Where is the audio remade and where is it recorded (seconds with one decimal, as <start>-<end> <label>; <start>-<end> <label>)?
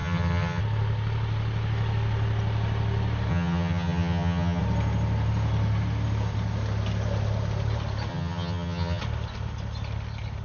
0.0-0.6 remade; 0.6-3.3 recorded; 3.3-4.6 remade; 4.6-8.1 recorded; 8.1-9.0 remade; 9.0-10.4 recorded